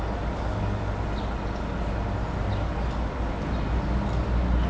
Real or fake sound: real